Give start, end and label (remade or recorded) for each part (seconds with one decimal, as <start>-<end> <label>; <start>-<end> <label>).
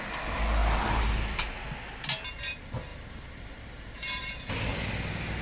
0.0-2.9 recorded; 2.9-4.9 remade; 4.9-5.4 recorded